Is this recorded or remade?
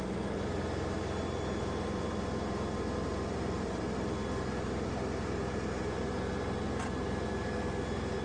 recorded